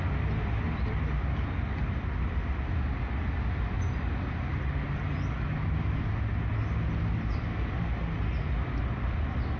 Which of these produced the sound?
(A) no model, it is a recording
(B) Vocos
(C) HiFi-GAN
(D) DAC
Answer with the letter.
A